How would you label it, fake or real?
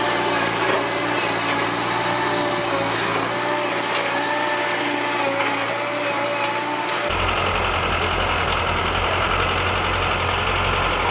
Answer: real